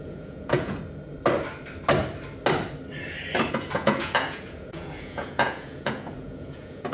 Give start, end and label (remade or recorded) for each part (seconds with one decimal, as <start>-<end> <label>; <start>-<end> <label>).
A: 0.0-0.8 remade; 0.8-3.5 recorded; 3.5-6.9 remade